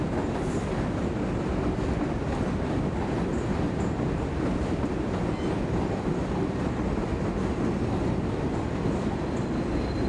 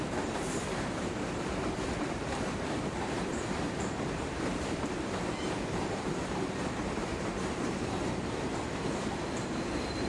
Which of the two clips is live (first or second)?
first